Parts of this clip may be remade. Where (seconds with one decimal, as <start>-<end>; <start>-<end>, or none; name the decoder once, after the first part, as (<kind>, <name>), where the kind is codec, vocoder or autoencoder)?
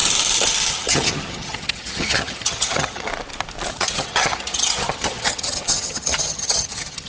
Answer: 0.7-3.1 (vocoder, HiFi-GAN); 3.7-7.1